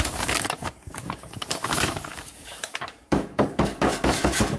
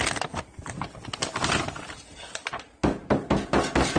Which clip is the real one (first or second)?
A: second